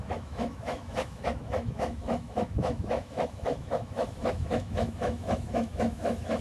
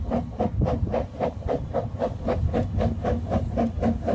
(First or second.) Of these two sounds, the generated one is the first